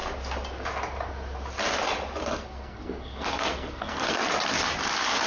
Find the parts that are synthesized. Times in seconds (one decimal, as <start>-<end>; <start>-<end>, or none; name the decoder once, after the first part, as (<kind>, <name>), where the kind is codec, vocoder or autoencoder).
2.2-4.3 (codec, SNAC)